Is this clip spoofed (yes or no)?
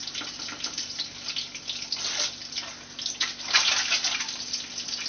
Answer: no